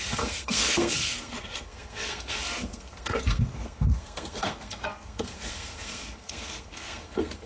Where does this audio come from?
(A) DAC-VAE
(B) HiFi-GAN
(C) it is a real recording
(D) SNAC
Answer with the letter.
D